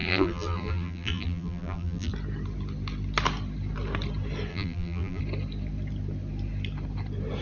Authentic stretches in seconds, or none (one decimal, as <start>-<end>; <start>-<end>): 2.1-4.5; 5.2-7.4